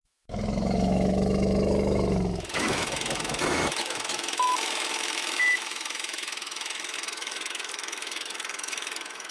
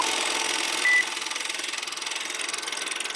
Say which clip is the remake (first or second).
first